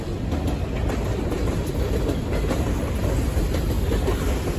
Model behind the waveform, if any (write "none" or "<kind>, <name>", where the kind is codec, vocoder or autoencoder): vocoder, BigVGAN v2